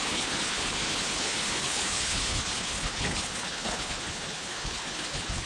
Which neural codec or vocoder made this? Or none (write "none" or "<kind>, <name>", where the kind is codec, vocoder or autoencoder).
codec, HILCodec